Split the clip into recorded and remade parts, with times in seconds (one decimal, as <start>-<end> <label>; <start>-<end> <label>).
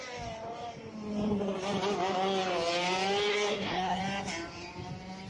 0.0-3.3 recorded; 3.3-4.0 remade; 4.0-5.3 recorded